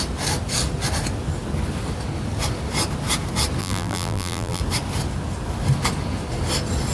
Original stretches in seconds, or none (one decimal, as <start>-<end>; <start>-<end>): 0.0-3.6; 4.6-6.9